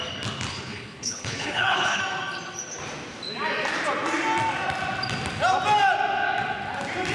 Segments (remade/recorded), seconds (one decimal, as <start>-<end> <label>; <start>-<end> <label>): 0.0-0.5 recorded; 0.5-2.0 remade; 2.0-7.1 recorded